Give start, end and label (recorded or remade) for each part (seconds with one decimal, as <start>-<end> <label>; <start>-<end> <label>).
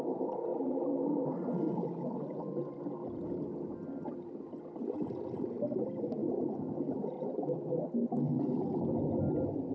0.0-9.7 recorded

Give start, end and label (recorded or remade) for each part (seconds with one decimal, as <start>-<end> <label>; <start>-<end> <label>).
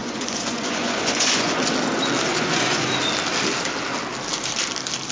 0.0-1.5 remade; 1.5-2.3 recorded; 2.3-2.9 remade; 2.9-5.1 recorded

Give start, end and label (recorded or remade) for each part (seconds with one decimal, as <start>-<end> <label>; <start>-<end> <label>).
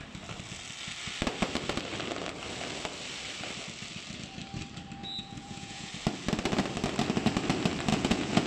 0.0-5.0 recorded; 5.0-5.9 remade; 5.9-7.9 recorded; 7.9-8.5 remade